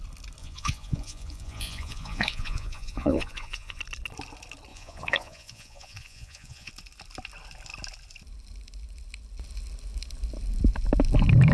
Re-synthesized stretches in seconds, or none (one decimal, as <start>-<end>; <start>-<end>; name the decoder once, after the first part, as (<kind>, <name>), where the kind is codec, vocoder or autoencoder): 0.4-3.8 (vocoder, Vocos); 4.7-6.7